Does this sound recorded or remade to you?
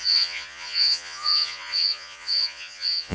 remade